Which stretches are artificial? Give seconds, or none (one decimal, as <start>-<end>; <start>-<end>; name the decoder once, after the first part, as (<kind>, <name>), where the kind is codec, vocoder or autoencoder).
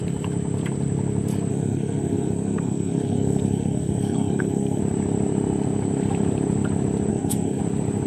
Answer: 1.5-4.8 (codec, SNAC); 7.1-7.6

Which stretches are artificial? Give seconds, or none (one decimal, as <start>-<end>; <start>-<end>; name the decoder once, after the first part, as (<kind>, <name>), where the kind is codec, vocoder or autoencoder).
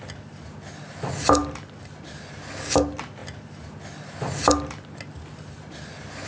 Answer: none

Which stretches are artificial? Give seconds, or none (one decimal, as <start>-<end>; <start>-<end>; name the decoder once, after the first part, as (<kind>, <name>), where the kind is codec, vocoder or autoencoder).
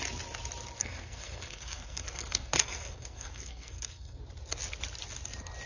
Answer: 0.8-4.2 (codec, SNAC)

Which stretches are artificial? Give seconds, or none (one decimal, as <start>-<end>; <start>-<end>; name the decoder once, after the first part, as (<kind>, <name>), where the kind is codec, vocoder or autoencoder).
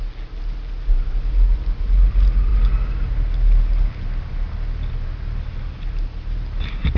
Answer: none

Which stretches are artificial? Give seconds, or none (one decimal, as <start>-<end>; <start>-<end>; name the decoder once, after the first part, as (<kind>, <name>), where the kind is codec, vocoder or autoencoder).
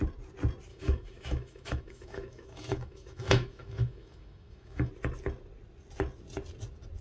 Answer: 0.7-4.9 (autoencoder, DAC-VAE)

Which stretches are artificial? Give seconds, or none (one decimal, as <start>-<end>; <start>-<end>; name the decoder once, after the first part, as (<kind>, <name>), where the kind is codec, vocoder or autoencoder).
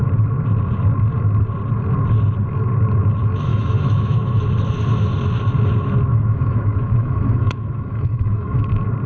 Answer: 3.5-4.4 (autoencoder, DAC-VAE); 6.1-8.7